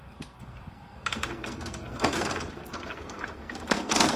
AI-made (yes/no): yes